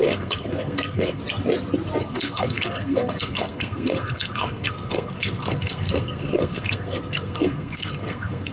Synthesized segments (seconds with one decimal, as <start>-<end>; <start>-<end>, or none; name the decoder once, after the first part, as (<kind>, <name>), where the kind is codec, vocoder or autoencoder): 0.0-1.2 (codec, SNAC); 2.0-8.5